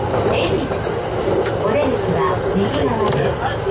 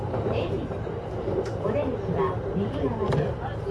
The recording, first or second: first